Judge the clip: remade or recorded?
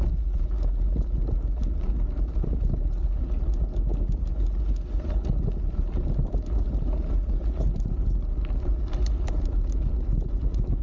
recorded